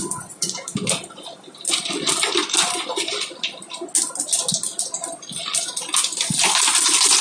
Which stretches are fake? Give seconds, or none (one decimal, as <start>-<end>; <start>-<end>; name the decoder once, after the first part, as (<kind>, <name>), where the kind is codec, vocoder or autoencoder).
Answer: none

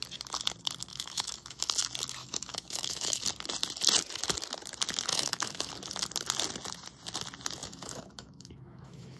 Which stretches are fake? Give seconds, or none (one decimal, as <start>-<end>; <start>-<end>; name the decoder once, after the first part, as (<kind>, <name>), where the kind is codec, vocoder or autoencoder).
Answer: 0.9-1.7 (autoencoder, DAC-VAE); 2.2-3.2; 5.1-5.7; 7.6-9.2

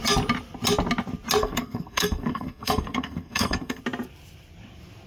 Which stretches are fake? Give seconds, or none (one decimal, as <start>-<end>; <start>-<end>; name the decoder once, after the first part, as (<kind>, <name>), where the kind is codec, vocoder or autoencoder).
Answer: 1.4-3.8 (codec, SNAC)